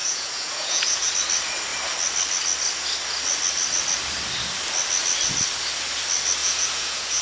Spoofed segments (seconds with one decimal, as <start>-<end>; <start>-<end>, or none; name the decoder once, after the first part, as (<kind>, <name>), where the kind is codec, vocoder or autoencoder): 0.0-1.1 (vocoder, Vocos); 6.4-7.2